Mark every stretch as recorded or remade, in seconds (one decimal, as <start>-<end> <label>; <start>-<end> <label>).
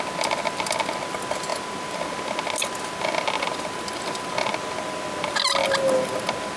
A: 0.0-6.6 recorded